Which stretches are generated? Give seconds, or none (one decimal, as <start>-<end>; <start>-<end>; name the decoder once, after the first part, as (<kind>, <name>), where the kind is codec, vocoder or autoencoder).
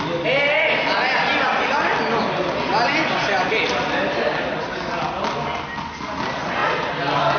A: none